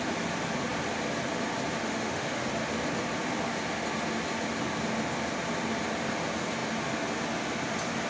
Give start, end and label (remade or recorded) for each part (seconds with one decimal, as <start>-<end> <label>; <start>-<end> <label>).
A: 0.0-1.8 recorded; 1.8-2.5 remade; 2.5-8.1 recorded